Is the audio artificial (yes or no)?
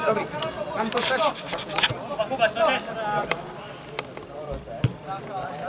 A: no